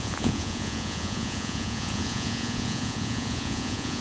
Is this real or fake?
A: fake